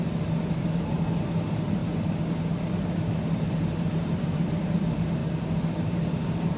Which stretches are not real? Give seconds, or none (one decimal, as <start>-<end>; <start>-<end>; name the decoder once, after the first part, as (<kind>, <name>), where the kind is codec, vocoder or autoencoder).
0.0-1.8 (vocoder, BigVGAN v2); 2.6-5.2; 5.7-6.6